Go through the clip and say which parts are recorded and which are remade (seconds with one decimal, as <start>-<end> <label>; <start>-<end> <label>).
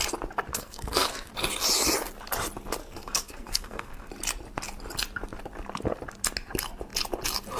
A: 0.0-0.5 recorded; 0.5-1.3 remade; 1.3-2.8 recorded; 2.8-4.1 remade; 4.1-7.6 recorded